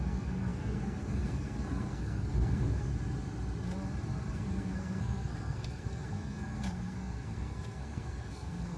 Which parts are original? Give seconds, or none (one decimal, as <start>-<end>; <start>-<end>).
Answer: 2.9-4.3